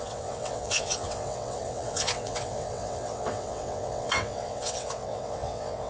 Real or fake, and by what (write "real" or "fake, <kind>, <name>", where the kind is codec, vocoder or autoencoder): fake, vocoder, WaveNeXt